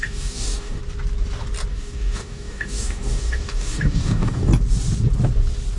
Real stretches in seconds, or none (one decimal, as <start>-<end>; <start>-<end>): 0.8-1.7; 4.5-5.8

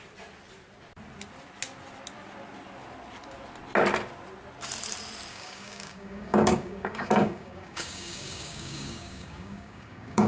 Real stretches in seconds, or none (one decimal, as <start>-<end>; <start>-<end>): 0.0-5.3

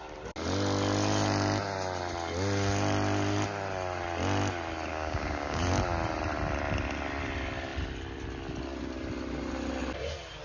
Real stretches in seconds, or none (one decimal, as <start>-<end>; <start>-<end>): 0.0-4.9; 5.6-10.4

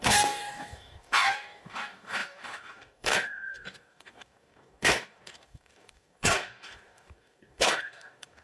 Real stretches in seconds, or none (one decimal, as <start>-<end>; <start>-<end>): none

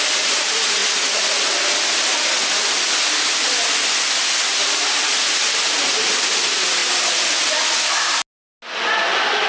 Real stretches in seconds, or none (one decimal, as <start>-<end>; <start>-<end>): 0.0-9.5

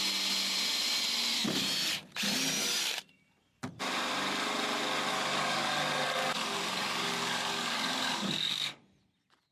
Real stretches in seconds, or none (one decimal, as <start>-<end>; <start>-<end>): 0.0-5.1; 8.8-9.5

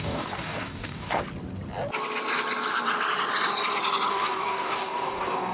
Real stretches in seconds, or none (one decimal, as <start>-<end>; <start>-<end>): 1.2-4.1

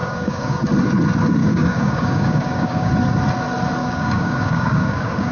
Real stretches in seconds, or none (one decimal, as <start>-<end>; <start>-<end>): 0.6-1.4; 2.9-3.8